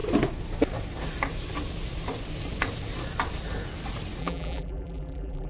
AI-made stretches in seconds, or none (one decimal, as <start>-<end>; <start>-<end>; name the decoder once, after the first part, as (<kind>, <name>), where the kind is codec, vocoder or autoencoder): 4.2-5.5 (vocoder, BigVGAN v2)